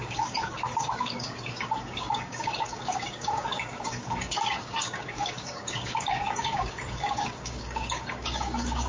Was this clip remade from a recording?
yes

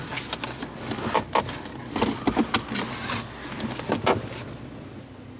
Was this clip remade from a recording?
no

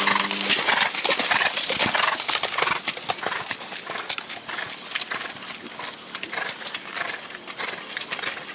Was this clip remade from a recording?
no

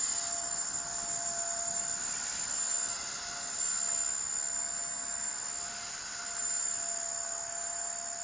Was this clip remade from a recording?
no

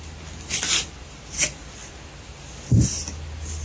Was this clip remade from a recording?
no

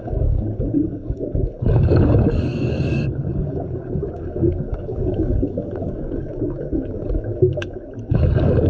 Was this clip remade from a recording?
yes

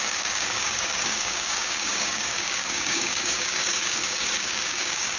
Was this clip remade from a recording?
yes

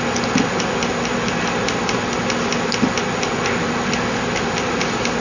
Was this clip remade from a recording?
no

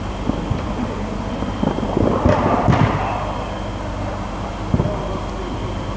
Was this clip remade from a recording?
no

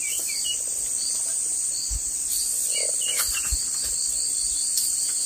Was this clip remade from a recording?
no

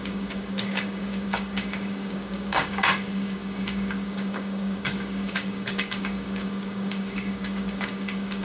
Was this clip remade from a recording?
yes